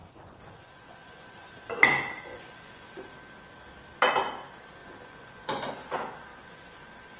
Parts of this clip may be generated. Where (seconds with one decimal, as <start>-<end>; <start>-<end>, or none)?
0.0-1.5; 2.3-3.1; 4.8-5.7; 6.3-7.2